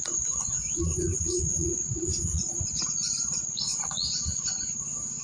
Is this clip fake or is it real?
fake